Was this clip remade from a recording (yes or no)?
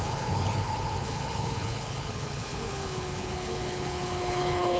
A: yes